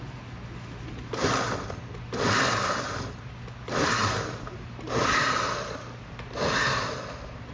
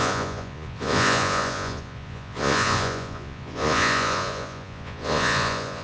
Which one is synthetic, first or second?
second